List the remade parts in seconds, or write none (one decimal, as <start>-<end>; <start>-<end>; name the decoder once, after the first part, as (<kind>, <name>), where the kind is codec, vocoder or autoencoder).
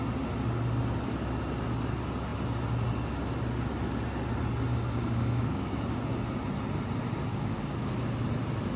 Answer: 4.7-5.8 (codec, DAC); 7.3-7.9